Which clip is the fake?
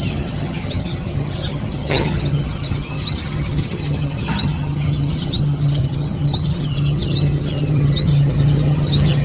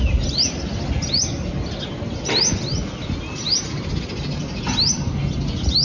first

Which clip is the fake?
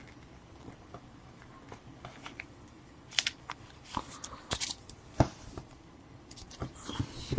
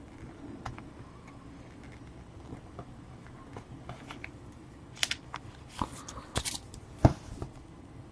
first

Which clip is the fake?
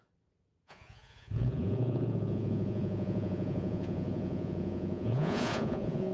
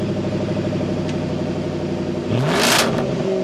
first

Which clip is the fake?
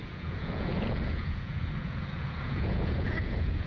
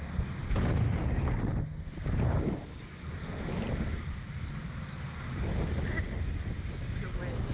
first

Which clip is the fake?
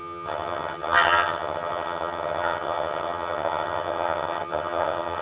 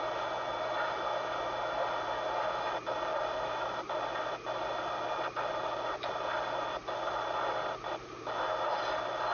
first